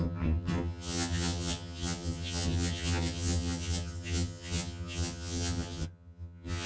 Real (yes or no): no